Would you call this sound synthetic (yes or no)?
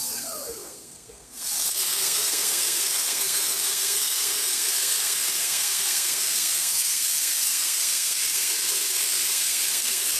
yes